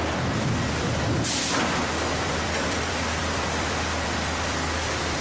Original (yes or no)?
no